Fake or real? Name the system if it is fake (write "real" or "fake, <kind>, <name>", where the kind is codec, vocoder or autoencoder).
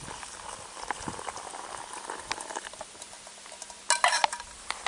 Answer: real